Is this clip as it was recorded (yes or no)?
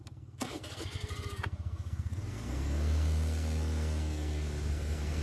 no